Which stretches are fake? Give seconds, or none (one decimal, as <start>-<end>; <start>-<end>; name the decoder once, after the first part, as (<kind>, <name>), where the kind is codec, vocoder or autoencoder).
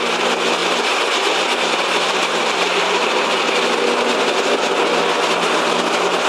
0.6-3.4 (vocoder, BigVGAN v2)